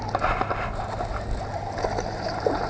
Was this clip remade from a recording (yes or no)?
no